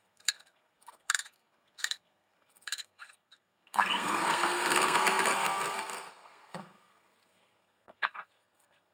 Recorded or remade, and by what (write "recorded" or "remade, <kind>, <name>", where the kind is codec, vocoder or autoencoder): remade, codec, SNAC